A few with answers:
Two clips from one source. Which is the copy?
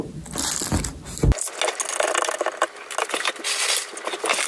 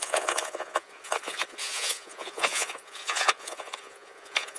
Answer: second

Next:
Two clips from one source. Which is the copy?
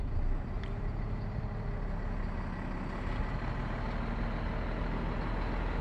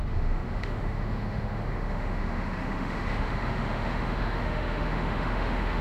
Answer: second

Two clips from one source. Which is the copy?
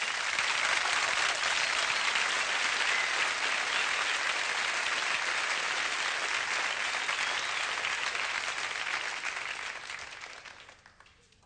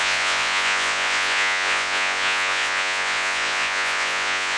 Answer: second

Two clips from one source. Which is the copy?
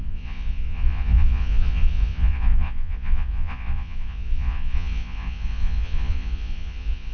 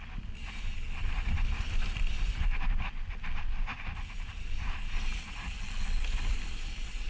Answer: first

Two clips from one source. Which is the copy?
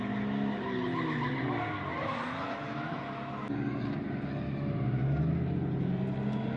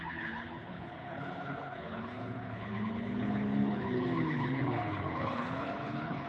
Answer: second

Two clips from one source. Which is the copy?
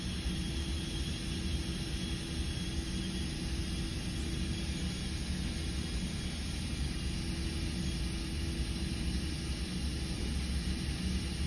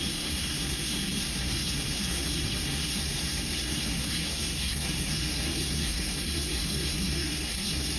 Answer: second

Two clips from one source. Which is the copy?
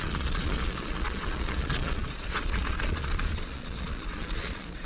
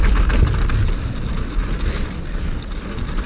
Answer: first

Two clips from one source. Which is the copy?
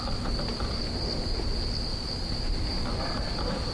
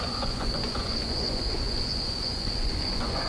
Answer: second